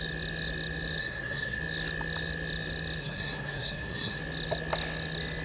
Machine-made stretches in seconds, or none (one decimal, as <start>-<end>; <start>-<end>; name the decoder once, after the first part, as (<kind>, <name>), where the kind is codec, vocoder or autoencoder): 1.0-1.6 (codec, SNAC); 3.0-4.2